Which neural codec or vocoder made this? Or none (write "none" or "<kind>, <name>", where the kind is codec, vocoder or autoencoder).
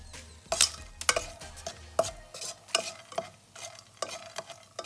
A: none